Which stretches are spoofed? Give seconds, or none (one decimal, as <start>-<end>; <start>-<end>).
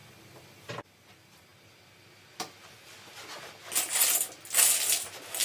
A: none